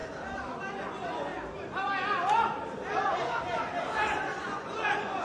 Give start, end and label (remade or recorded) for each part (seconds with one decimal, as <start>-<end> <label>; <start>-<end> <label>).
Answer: 0.0-0.7 recorded; 0.7-1.3 remade; 1.3-4.4 recorded; 4.4-5.2 remade